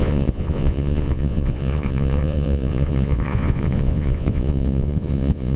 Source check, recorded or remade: remade